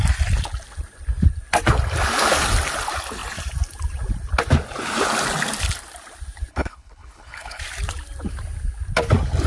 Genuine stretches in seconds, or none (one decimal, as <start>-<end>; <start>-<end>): 0.0-6.5; 7.6-9.5